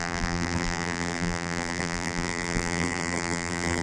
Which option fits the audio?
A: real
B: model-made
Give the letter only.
B